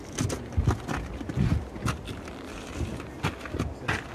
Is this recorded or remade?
recorded